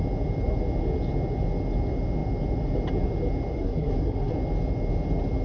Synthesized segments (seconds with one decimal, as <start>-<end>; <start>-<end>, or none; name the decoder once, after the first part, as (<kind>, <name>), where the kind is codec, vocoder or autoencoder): 3.5-4.3 (codec, SNAC)

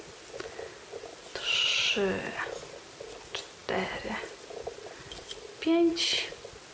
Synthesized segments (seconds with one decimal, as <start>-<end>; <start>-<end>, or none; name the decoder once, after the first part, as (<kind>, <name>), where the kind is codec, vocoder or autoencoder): none

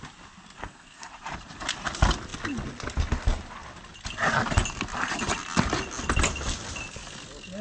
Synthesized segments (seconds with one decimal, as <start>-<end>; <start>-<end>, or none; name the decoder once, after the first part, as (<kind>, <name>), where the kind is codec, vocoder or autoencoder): 0.6-1.1 (codec, SNAC)

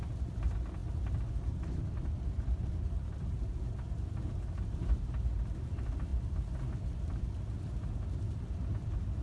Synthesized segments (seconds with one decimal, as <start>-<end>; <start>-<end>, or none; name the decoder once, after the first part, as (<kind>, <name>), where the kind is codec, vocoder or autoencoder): none

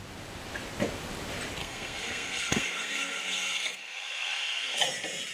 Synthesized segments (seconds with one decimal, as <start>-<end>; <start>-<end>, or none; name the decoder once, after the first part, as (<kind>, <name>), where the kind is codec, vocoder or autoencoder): 1.6-4.8 (codec, SNAC)

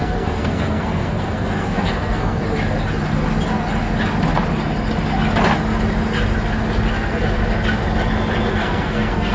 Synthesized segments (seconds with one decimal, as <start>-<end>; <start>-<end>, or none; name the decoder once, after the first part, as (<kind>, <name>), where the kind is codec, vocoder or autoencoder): 0.0-2.4 (codec, SNAC); 6.9-7.4; 8.5-9.3

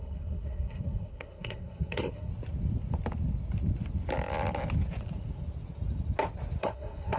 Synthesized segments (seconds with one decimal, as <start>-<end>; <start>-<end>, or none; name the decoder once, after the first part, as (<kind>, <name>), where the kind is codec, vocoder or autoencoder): 0.0-2.3 (codec, SNAC); 6.6-7.2